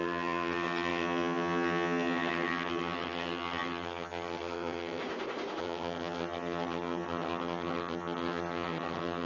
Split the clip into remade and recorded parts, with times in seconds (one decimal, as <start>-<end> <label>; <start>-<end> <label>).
0.0-5.0 remade; 5.0-5.6 recorded; 5.6-9.3 remade